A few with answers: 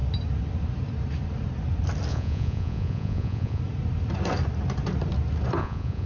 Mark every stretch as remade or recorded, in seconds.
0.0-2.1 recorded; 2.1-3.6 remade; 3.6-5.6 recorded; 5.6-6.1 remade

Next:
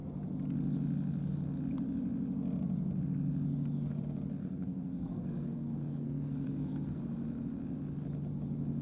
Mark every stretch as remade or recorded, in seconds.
0.0-4.4 recorded; 4.4-7.0 remade; 7.0-8.8 recorded

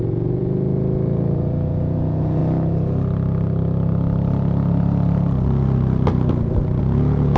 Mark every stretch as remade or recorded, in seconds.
0.0-2.4 remade; 2.4-6.8 recorded; 6.8-7.4 remade

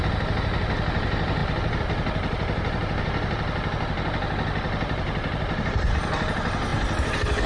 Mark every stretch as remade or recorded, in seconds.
0.0-7.5 recorded

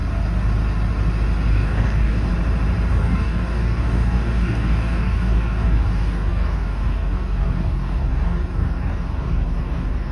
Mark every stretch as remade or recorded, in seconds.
0.0-1.5 recorded; 1.5-2.3 remade; 2.3-2.9 recorded; 2.9-10.1 remade

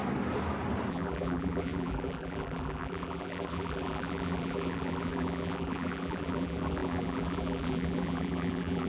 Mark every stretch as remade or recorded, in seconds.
0.0-0.9 recorded; 0.9-8.9 remade